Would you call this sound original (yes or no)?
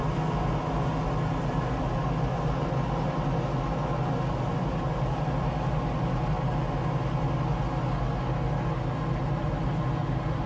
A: yes